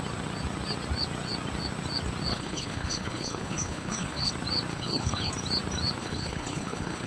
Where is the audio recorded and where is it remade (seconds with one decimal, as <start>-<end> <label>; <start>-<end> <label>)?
0.0-2.3 recorded; 2.3-4.3 remade; 4.3-4.7 recorded; 4.7-5.3 remade; 5.3-6.0 recorded; 6.0-7.1 remade